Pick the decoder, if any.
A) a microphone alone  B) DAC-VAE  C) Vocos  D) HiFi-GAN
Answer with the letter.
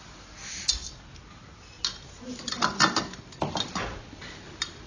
A